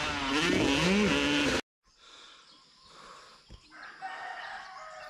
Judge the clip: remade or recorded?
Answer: recorded